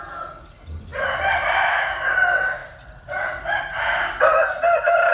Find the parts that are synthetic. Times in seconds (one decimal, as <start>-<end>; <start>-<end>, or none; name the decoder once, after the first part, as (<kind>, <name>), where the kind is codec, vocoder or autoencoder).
none